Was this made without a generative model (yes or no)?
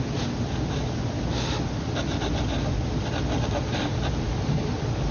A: yes